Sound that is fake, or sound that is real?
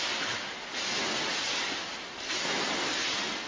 real